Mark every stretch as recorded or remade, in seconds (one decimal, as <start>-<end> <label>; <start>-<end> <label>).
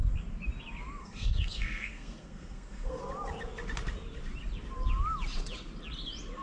0.0-1.0 recorded; 1.0-3.0 remade; 3.0-6.4 recorded